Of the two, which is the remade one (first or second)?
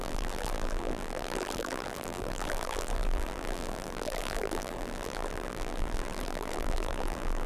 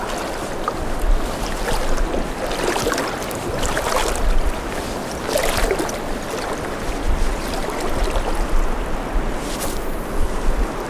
first